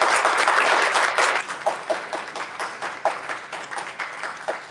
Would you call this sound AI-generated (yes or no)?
no